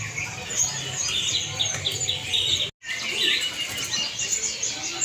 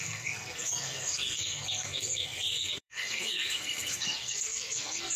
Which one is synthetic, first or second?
second